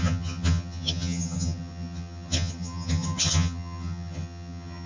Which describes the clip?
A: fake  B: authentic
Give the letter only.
A